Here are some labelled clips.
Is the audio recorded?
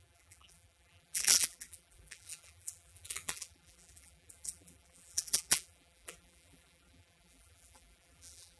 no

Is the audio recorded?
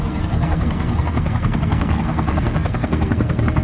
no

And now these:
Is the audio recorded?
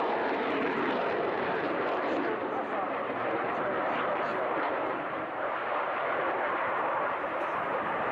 no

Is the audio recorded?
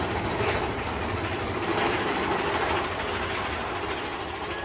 yes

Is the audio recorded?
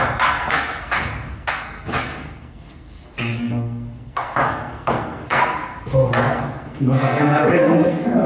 no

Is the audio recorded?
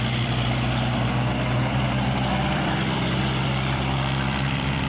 no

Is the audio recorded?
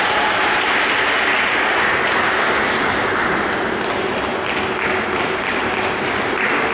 no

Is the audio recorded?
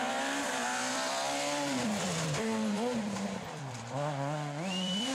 no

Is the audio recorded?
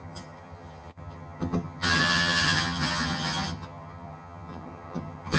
no